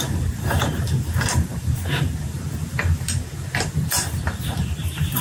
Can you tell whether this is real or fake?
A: fake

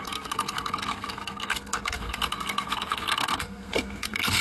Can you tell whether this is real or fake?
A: fake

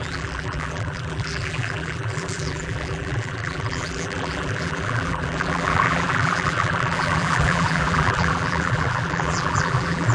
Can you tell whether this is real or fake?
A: fake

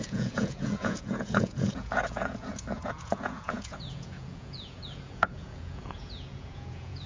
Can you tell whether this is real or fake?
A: fake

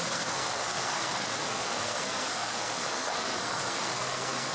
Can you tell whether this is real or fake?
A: fake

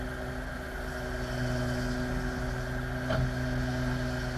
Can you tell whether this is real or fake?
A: real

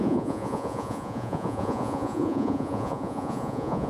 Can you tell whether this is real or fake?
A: fake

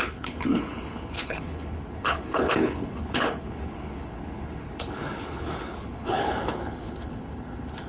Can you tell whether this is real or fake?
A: fake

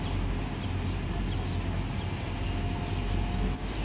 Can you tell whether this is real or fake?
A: real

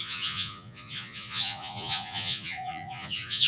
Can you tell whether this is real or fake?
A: fake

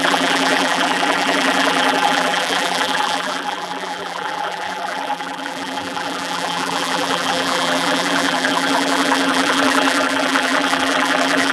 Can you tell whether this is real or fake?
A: fake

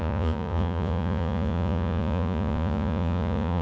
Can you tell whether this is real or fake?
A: fake